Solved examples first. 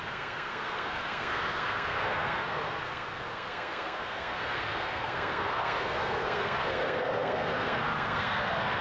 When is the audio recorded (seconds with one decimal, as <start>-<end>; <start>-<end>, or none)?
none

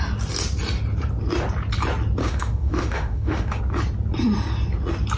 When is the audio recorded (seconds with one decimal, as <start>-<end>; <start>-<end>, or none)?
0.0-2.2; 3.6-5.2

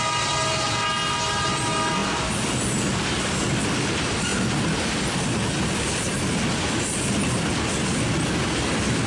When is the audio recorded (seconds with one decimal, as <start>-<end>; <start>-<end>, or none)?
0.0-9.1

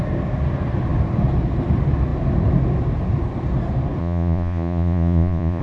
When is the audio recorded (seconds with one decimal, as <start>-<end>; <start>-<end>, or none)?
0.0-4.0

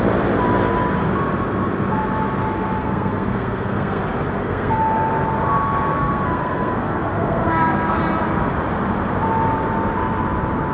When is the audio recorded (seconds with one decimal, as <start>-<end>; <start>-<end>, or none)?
0.0-2.8; 4.0-4.4; 5.1-5.9; 8.0-10.7

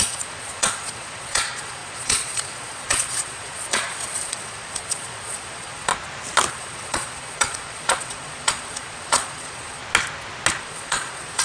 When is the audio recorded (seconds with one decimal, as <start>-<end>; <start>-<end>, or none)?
5.9-6.5; 9.8-10.6

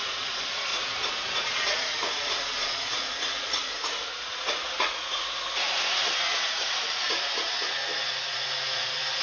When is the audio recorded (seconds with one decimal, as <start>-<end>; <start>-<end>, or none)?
none

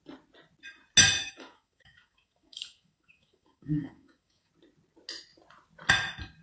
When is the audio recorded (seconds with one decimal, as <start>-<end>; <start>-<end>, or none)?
0.0-1.2; 4.5-6.4